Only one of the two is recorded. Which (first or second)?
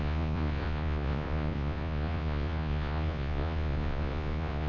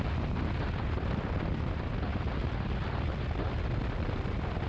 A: second